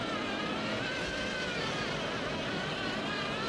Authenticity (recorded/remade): recorded